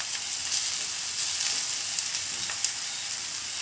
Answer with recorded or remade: recorded